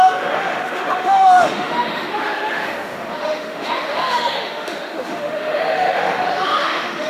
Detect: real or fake fake